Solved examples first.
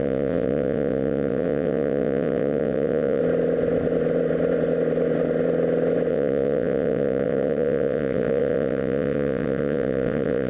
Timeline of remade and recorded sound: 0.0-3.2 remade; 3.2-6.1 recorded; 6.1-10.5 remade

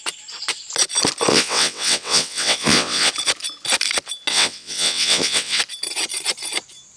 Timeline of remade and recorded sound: 0.0-1.3 recorded; 1.3-3.1 remade; 3.1-4.3 recorded; 4.3-5.6 remade; 5.6-7.0 recorded